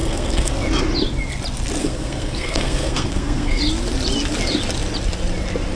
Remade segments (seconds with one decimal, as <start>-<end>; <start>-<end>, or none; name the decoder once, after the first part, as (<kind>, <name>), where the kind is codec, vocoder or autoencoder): 0.0-0.5 (codec, SNAC); 1.8-3.6

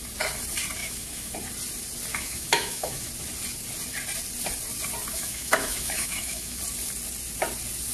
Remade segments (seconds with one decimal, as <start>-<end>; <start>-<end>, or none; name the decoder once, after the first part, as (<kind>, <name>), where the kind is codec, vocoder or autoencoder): 0.8-1.3 (autoencoder, DAC-VAE); 2.1-3.1; 5.1-6.6

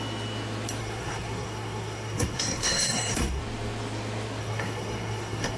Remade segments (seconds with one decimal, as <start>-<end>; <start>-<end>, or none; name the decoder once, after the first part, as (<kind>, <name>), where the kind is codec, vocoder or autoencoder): 0.8-3.4 (codec, SNAC); 4.4-5.6

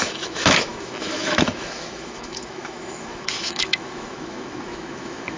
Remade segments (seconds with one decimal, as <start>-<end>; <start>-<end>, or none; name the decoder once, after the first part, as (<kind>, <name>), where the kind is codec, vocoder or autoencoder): 0.0-5.4 (autoencoder, DAC-VAE)

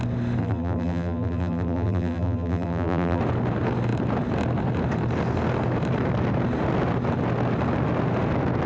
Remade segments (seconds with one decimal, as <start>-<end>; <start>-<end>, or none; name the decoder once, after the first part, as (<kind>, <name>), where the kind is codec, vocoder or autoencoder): 0.4-3.2 (vocoder, BigVGAN v2)

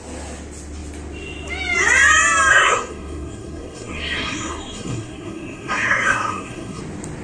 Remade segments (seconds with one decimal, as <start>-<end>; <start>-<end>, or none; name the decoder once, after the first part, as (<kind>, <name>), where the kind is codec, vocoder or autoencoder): 2.5-6.8 (codec, SNAC)